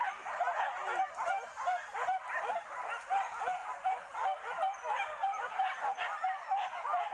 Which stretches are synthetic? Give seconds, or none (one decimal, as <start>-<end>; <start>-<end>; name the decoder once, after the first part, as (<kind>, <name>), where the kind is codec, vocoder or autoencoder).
none